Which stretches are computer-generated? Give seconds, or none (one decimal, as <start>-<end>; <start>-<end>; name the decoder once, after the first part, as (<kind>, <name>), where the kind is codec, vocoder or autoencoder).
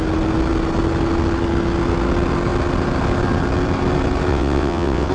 4.3-5.1 (vocoder, WaveNeXt)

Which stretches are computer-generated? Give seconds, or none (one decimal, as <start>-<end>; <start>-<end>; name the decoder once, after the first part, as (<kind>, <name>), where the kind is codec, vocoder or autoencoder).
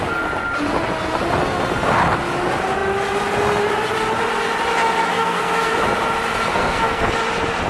5.1-5.7 (codec, SNAC); 6.5-7.1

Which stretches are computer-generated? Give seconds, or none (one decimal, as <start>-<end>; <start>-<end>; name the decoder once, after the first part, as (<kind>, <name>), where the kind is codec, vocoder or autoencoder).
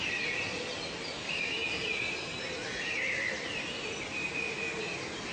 none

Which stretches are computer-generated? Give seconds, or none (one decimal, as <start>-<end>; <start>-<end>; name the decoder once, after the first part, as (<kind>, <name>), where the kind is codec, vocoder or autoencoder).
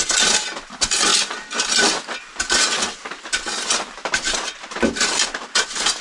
none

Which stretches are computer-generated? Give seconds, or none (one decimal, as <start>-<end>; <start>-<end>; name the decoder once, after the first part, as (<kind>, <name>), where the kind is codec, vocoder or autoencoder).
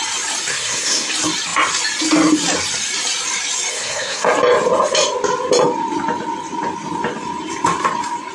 0.5-1.1 (codec, SNAC); 3.7-4.3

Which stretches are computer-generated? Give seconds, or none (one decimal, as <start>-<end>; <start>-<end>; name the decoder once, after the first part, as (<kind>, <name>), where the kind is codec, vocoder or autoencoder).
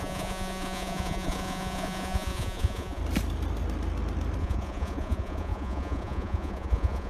0.0-3.0 (vocoder, Vocos); 4.4-7.1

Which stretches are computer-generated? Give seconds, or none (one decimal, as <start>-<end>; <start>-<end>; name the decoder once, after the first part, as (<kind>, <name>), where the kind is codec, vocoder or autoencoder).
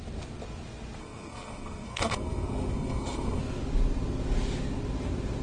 1.0-3.4 (codec, SNAC)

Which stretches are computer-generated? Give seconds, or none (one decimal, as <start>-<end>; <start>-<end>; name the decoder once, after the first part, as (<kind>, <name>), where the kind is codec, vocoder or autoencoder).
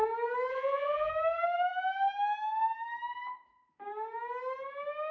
0.5-1.1 (vocoder, BigVGAN v2)